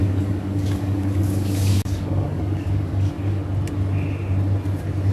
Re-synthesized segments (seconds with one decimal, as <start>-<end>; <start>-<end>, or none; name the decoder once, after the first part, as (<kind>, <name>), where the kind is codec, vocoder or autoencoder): 0.0-3.4 (codec, DAC)